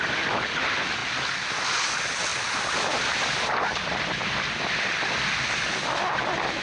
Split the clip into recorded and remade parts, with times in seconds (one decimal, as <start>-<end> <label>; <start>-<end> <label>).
0.0-2.3 recorded; 2.3-3.5 remade; 3.5-6.6 recorded